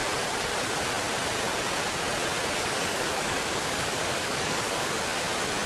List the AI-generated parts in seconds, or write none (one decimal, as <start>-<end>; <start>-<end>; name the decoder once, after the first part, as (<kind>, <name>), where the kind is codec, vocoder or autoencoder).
2.6-5.0 (codec, DAC)